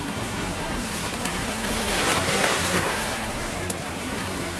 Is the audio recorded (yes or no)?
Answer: no